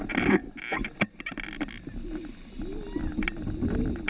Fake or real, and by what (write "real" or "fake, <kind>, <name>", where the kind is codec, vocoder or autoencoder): real